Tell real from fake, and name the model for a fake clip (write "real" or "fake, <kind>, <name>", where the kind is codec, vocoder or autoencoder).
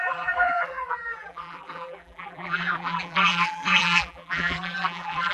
fake, vocoder, BigVGAN v2